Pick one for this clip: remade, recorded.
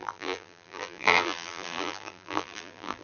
remade